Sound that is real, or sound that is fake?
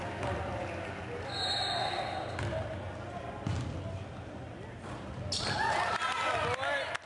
real